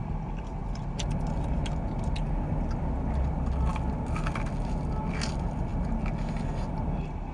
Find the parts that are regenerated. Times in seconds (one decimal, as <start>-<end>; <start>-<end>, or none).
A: none